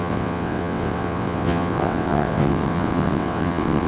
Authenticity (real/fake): fake